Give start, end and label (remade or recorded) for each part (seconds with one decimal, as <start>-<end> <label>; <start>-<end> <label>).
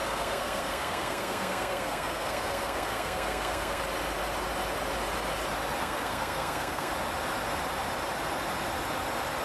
0.0-3.8 remade; 3.8-5.8 recorded; 5.8-6.9 remade; 6.9-9.4 recorded